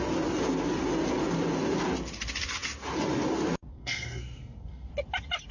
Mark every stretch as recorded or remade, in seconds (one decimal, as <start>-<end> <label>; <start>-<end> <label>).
0.0-3.7 recorded; 3.7-4.9 remade; 4.9-5.5 recorded